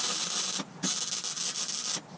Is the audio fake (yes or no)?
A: no